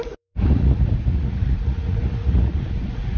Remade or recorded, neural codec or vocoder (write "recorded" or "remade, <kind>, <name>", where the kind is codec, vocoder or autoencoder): remade, vocoder, Vocos